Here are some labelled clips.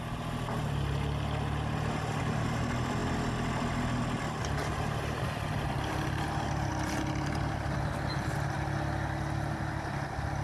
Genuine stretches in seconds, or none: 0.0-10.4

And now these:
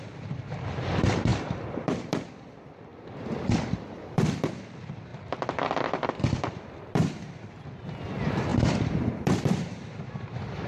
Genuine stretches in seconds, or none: 5.1-5.9; 8.5-9.2

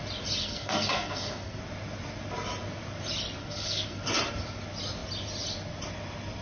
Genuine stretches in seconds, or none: 0.0-0.4; 1.6-3.4; 4.0-6.4

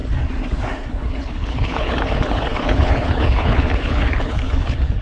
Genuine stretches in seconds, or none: 0.0-0.9

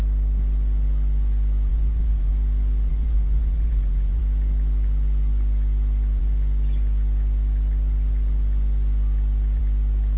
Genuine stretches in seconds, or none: 0.0-1.7; 2.3-2.9; 4.2-10.2